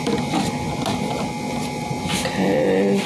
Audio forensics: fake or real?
real